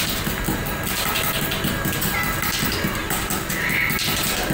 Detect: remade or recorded recorded